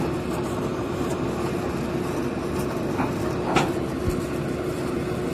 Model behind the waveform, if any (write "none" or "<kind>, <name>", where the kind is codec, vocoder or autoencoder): none